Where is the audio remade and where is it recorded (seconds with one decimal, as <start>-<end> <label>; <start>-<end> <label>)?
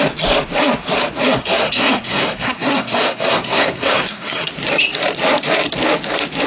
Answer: 0.0-1.4 recorded; 1.4-4.5 remade; 4.5-6.5 recorded